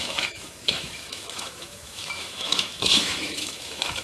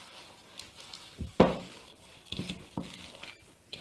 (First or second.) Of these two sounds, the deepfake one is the first